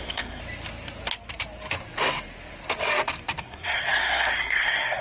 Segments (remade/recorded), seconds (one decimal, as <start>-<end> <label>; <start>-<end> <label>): 0.0-0.4 remade; 0.4-3.4 recorded; 3.4-5.0 remade

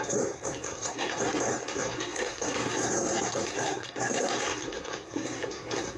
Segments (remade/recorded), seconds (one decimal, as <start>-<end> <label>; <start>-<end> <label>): 0.0-6.0 remade

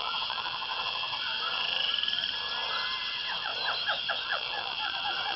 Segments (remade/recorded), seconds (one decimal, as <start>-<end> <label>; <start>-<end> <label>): 0.0-1.9 remade; 1.9-3.0 recorded; 3.0-3.5 remade; 3.5-4.1 recorded; 4.1-5.4 remade

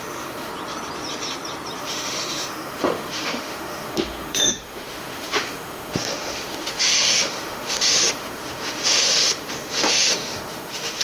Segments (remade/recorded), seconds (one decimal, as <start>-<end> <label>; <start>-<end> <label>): 0.0-0.5 remade; 0.5-1.8 recorded; 1.8-11.0 remade

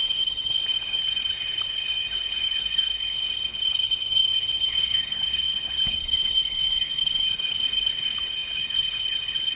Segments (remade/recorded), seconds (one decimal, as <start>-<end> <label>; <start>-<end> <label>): 0.0-9.6 remade

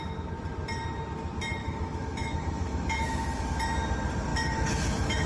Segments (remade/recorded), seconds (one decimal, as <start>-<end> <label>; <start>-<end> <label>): 0.0-1.6 recorded; 1.6-3.4 remade; 3.4-4.3 recorded; 4.3-5.3 remade

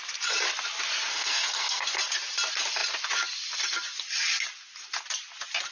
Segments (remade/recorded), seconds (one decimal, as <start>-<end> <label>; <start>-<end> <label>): 0.0-1.1 recorded; 1.1-1.8 remade; 1.8-5.7 recorded